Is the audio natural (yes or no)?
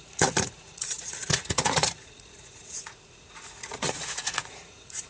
no